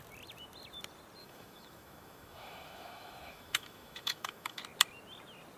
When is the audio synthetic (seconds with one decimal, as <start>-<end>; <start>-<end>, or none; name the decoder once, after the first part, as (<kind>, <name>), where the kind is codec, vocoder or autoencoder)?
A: 1.2-4.6 (autoencoder, DAC-VAE)